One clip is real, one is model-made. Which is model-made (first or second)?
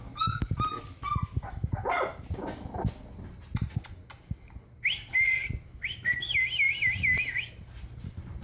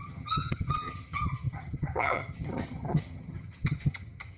second